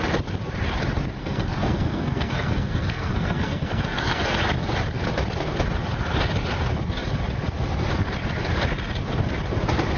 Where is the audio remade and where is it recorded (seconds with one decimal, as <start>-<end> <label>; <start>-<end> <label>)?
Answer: 0.0-1.2 recorded; 1.2-4.4 remade; 4.4-10.0 recorded